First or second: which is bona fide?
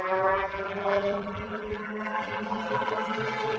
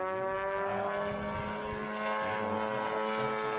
second